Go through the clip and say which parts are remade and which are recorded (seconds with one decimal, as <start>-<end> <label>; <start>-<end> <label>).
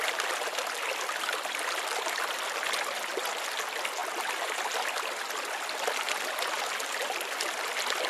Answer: 0.0-8.1 recorded